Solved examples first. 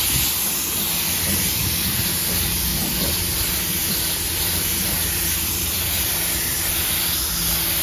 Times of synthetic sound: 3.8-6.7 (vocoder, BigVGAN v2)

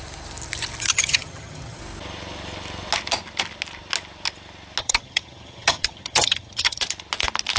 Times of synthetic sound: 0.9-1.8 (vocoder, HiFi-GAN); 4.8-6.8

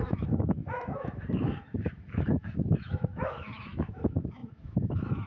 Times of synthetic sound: 0.0-5.3 (autoencoder, DAC-VAE)

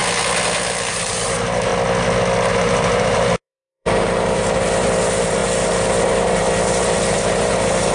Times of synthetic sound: 0.9-1.7 (vocoder, BigVGAN v2); 2.6-5.4; 6.1-7.9

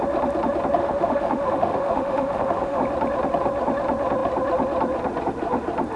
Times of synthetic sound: 0.8-2.8 (autoencoder, DAC-VAE)

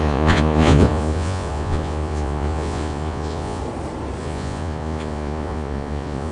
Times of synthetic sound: 0.0-3.6 (vocoder, Vocos); 4.2-6.3

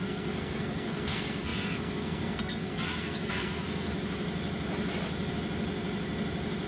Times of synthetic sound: 0.0-3.9 (codec, SNAC)

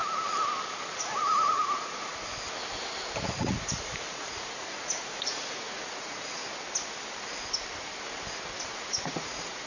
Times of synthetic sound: 0.9-2.3 (vocoder, Vocos); 3.3-6.4; 8.6-9.7